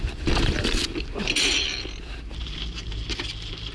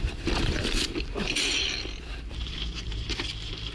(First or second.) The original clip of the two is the first